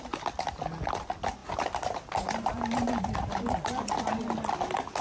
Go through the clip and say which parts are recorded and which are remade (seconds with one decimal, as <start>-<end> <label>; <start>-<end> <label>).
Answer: 0.0-1.4 recorded; 1.4-3.8 remade; 3.8-5.0 recorded